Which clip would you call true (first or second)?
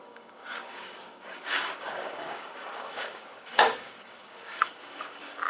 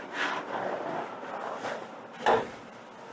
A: second